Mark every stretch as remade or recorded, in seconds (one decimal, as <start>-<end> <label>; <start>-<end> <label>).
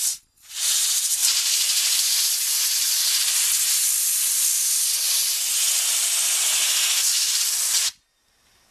0.0-1.2 recorded; 1.2-2.2 remade; 2.2-8.7 recorded